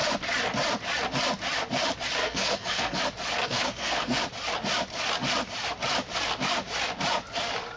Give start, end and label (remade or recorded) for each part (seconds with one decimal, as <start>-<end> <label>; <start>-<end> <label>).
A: 0.0-2.2 recorded; 2.2-3.0 remade; 3.0-3.4 recorded; 3.4-4.2 remade; 4.2-7.8 recorded